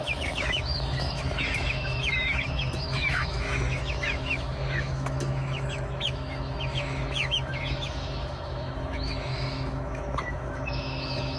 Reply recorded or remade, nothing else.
remade